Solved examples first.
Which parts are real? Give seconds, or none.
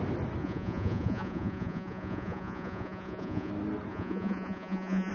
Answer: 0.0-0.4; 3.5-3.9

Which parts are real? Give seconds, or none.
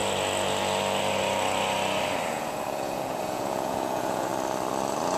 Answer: 0.0-2.3; 4.3-5.2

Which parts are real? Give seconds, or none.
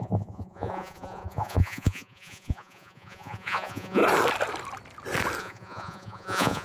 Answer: 4.0-5.4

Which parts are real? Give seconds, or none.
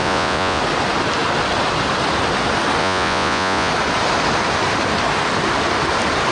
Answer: 0.6-2.8; 3.7-6.3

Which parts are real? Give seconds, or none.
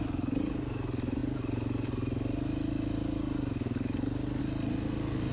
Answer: 0.0-5.3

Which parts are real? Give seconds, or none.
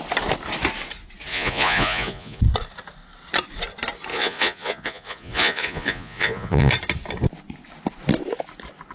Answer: 0.0-1.3; 2.4-4.1; 6.7-8.9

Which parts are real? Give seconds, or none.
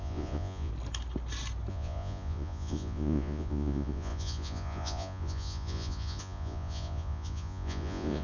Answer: 0.7-1.7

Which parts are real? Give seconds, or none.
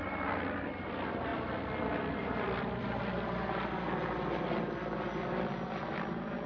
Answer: 0.0-6.5